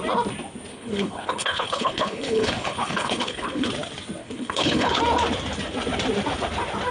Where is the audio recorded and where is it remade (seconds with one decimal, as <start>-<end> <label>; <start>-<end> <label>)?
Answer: 0.0-0.7 recorded; 0.7-3.7 remade; 3.7-4.2 recorded; 4.2-5.0 remade; 5.0-6.9 recorded